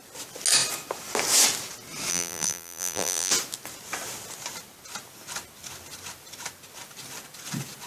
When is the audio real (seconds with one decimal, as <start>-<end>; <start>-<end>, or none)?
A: 0.0-2.1; 3.3-7.9